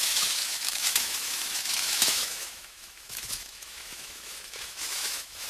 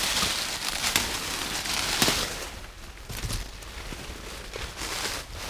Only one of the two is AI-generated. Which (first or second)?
first